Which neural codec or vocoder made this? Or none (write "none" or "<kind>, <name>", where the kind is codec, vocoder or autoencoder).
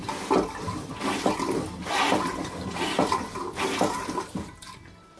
none